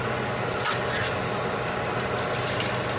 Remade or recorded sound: recorded